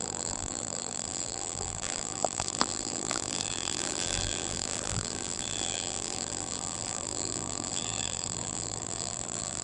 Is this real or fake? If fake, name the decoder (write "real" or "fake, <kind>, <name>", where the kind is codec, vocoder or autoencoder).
fake, vocoder, BigVGAN v2